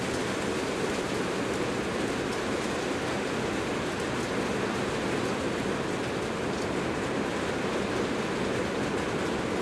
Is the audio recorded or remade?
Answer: recorded